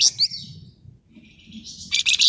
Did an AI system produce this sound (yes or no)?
no